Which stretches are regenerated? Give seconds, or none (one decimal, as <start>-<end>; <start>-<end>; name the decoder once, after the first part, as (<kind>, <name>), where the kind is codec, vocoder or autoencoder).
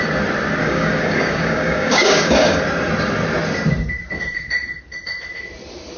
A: 0.6-2.6 (codec, DAC)